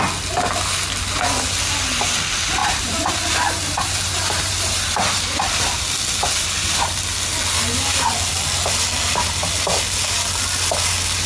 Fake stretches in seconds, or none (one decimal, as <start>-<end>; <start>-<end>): 2.6-5.5